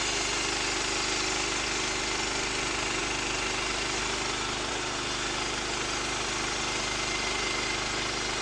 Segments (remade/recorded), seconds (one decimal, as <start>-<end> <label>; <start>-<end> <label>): 0.0-8.4 recorded